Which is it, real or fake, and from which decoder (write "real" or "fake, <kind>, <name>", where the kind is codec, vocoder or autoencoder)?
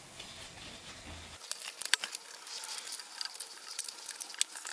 real